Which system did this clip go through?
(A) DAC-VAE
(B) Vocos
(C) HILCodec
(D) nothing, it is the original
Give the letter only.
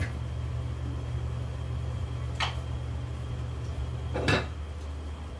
D